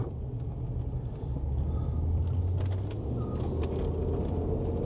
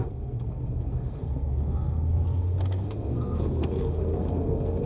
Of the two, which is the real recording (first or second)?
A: first